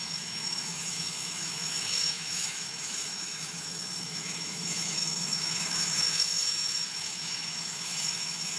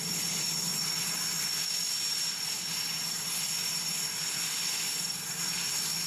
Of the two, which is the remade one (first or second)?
first